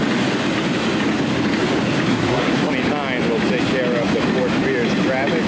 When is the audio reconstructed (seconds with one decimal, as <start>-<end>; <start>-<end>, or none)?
2.1-2.7